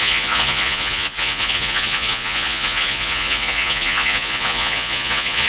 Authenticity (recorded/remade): remade